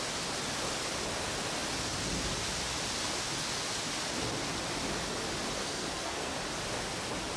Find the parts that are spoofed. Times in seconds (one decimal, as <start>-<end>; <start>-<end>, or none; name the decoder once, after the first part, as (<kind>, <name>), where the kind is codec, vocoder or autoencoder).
5.6-6.3 (codec, SNAC)